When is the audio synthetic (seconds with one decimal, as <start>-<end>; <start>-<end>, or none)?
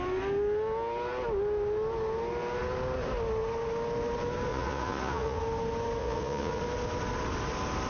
4.5-5.4; 6.0-6.6